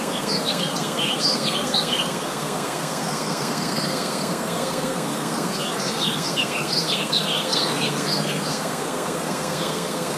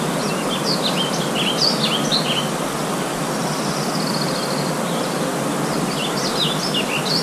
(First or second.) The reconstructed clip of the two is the first